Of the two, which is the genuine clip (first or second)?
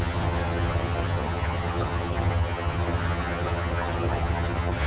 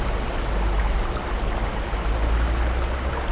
second